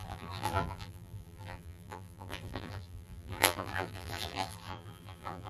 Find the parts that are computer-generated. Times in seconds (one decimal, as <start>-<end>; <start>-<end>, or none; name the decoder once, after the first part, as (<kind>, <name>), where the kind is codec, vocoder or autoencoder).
0.0-5.5 (vocoder, BigVGAN v2)